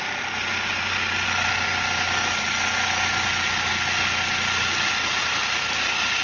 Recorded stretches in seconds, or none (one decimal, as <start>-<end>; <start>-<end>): 0.0-6.2